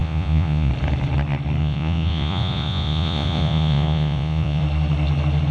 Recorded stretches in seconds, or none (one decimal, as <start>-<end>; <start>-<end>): 0.7-1.6; 4.6-5.5